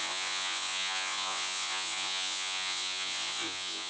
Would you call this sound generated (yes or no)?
yes